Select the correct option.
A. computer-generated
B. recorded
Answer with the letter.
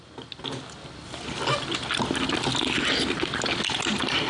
B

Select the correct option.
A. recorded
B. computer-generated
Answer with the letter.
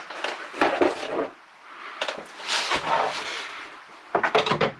A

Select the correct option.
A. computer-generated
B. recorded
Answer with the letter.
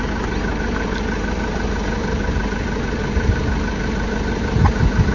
B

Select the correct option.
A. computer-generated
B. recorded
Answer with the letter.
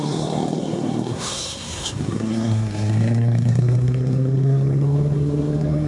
A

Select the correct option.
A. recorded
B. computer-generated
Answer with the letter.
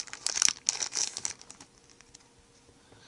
A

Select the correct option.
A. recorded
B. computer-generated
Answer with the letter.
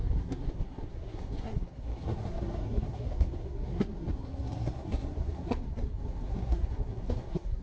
B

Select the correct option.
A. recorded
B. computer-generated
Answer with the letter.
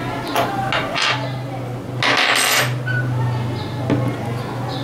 A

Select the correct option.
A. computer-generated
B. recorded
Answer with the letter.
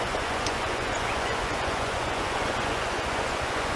A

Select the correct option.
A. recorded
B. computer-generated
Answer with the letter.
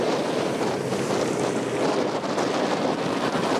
A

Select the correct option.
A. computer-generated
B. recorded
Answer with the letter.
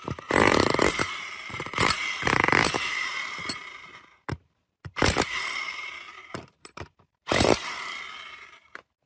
A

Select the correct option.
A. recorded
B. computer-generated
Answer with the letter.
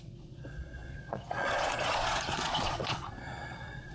B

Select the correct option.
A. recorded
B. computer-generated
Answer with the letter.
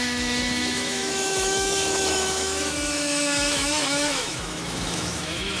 B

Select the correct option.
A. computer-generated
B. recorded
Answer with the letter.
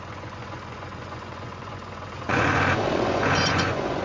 A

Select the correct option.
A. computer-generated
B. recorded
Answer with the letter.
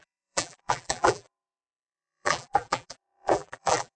A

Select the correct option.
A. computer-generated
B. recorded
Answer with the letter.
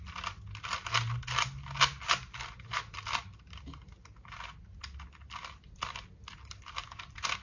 B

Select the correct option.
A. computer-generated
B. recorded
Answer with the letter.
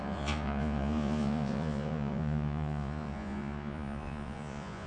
A